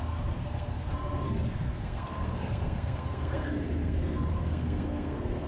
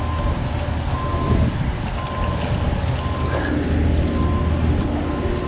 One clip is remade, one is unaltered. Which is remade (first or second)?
first